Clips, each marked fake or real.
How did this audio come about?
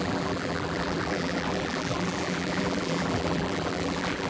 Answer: fake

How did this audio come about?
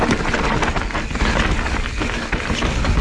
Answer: real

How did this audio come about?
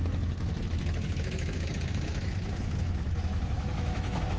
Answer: fake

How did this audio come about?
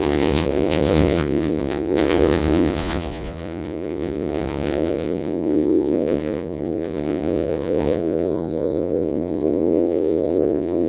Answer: fake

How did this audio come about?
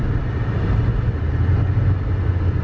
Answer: real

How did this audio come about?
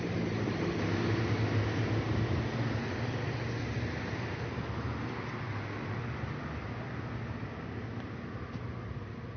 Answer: real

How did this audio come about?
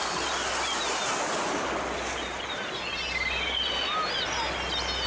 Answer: real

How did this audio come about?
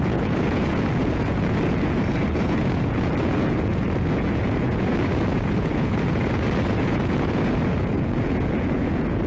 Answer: fake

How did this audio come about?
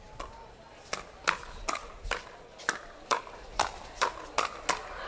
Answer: real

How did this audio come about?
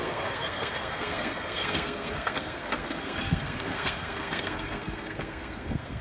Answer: fake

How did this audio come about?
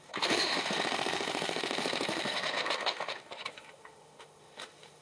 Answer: fake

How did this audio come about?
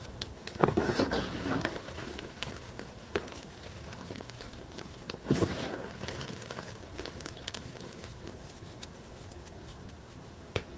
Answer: fake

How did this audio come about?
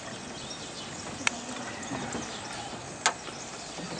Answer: real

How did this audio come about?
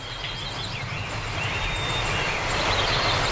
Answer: real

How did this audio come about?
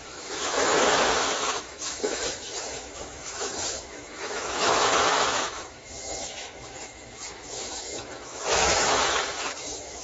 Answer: fake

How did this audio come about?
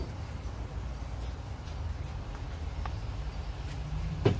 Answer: real